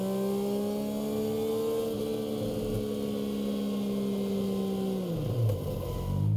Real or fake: real